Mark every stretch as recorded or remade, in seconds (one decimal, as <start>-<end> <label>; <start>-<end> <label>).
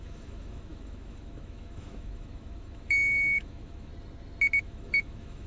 0.0-3.9 remade; 3.9-4.6 recorded; 4.6-5.5 remade